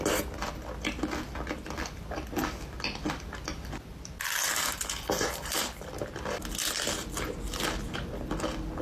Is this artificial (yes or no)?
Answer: no